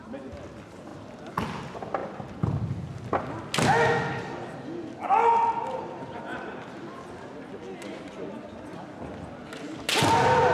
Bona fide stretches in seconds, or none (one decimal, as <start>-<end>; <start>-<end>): 0.0-10.5

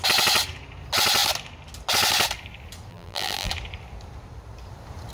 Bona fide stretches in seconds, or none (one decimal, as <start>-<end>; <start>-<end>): 0.0-2.9; 3.5-5.1

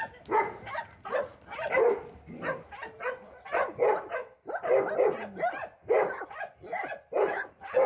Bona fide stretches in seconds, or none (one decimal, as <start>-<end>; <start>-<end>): 0.0-7.9

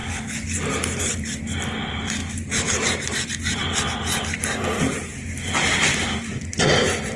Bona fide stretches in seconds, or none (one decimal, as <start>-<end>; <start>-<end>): 0.0-0.7; 3.6-4.9

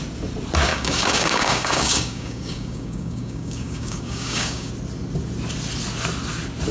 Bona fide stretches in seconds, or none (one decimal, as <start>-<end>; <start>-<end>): 0.0-0.7; 4.7-6.7

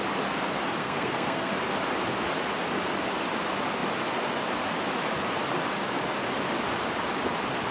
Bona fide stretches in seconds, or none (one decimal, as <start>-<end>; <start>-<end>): 0.0-0.8; 1.5-7.7

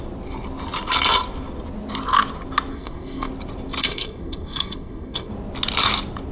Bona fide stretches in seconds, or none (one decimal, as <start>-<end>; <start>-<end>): 0.0-2.7; 3.3-3.8; 5.3-6.3

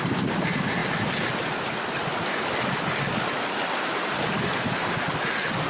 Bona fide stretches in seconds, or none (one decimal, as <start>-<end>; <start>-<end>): 0.0-5.7